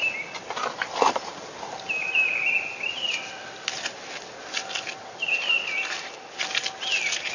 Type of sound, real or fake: real